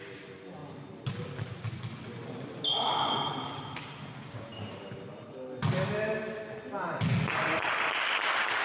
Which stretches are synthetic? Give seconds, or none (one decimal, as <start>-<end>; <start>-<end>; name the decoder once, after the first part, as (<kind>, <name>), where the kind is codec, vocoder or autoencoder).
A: none